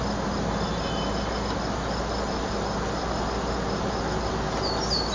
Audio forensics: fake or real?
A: real